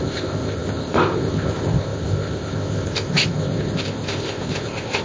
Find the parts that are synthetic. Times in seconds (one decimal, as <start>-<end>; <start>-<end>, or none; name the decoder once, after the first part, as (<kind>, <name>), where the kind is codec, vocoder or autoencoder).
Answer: 0.0-5.0 (codec, ZipCodec)